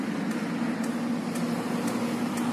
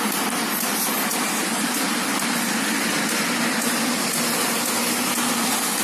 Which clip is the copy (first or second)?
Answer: second